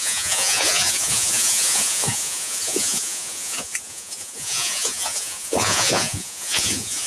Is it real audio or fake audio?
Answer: fake